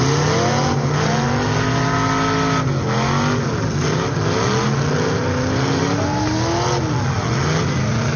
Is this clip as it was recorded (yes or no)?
yes